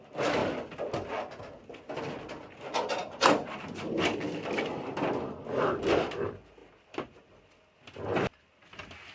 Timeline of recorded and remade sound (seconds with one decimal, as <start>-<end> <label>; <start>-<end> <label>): 0.0-0.4 recorded; 0.4-1.4 remade; 1.4-3.0 recorded; 3.0-6.1 remade; 6.1-6.6 recorded; 6.6-7.4 remade; 7.4-9.1 recorded